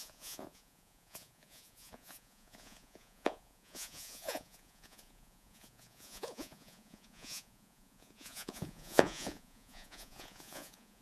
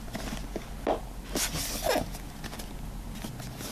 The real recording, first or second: second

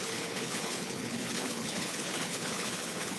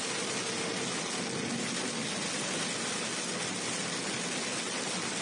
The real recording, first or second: second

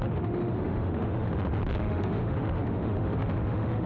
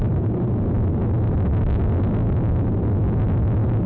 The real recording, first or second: second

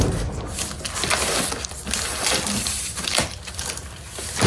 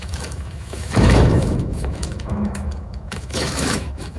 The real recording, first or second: first